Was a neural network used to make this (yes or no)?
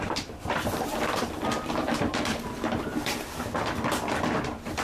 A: yes